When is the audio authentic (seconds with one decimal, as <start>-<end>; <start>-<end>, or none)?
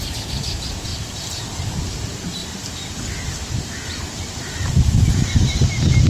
0.9-1.8; 2.4-3.5